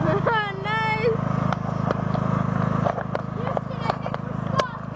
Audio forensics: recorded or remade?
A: recorded